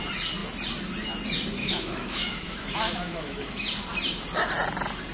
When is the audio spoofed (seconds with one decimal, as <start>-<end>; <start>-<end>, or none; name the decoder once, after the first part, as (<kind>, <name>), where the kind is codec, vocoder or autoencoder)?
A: 1.6-3.5 (autoencoder, DAC-VAE)